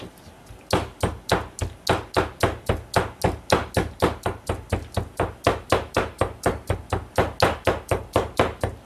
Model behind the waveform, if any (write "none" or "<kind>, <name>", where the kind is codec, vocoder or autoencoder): none